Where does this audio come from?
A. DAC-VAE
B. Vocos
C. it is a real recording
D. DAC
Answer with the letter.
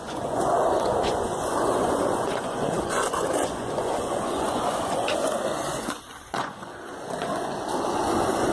B